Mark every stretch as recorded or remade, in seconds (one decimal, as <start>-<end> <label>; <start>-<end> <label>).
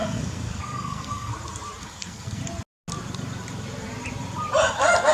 0.0-1.3 remade; 1.3-1.8 recorded; 1.8-2.4 remade; 2.4-5.1 recorded